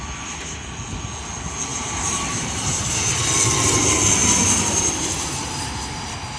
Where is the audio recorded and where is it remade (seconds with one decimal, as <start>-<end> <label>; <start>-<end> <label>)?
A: 0.0-1.7 recorded; 1.7-3.1 remade; 3.1-4.2 recorded; 4.2-6.0 remade; 6.0-6.4 recorded